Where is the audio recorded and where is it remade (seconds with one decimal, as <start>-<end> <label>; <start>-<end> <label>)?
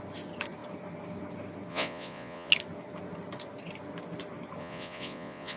0.0-1.7 recorded; 1.7-2.5 remade; 2.5-4.6 recorded; 4.6-5.6 remade